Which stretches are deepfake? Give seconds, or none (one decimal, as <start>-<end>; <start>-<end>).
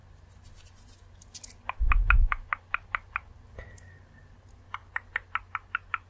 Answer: none